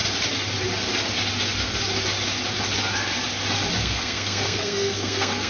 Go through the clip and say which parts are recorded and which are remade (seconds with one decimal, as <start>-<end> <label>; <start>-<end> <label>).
0.0-3.8 recorded; 3.8-5.5 remade